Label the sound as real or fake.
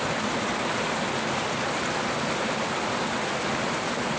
real